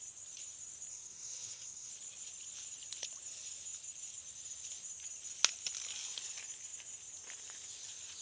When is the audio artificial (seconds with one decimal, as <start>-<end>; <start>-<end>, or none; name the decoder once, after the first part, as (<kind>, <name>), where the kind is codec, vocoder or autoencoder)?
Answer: 0.9-1.9 (codec, SNAC)